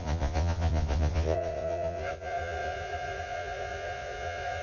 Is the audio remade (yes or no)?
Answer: yes